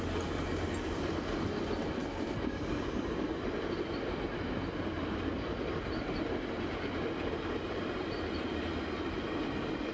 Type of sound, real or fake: fake